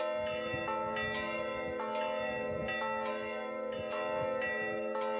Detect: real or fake real